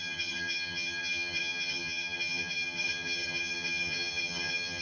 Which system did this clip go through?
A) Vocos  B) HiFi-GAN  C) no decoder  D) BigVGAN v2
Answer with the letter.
B